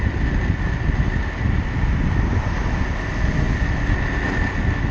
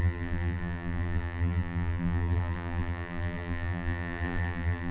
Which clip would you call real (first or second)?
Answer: first